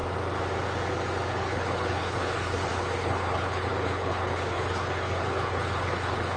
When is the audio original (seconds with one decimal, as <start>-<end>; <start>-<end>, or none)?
0.0-1.3